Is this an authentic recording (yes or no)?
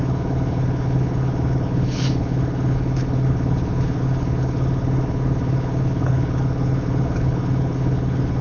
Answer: no